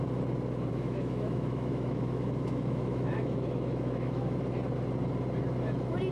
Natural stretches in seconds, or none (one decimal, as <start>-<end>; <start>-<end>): 0.0-0.7; 4.4-6.1